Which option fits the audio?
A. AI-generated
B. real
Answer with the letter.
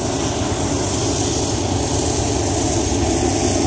B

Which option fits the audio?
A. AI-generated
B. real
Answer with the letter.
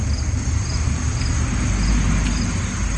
B